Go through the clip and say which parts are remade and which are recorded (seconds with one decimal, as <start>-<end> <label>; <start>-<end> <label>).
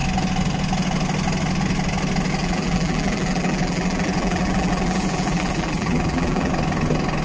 0.0-2.4 recorded; 2.4-6.5 remade; 6.5-7.2 recorded